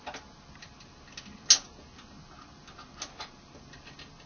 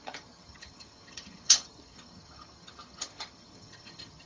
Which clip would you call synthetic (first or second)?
second